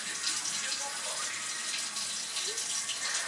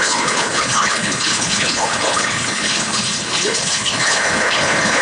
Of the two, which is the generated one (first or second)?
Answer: second